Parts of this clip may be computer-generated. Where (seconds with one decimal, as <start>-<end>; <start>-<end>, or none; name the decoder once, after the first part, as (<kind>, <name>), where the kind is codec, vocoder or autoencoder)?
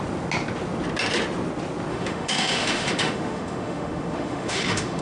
1.9-5.0 (autoencoder, DAC-VAE)